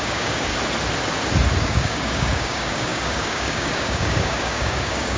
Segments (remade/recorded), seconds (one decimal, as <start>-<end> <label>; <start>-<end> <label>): 0.0-0.5 remade; 0.5-1.6 recorded; 1.6-5.2 remade